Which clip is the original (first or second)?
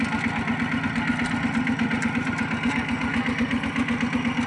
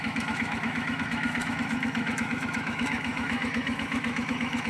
first